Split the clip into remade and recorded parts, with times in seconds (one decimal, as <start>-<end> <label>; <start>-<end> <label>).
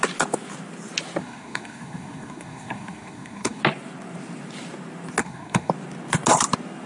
0.0-1.2 recorded; 1.2-3.6 remade; 3.6-5.2 recorded; 5.2-5.7 remade; 5.7-6.9 recorded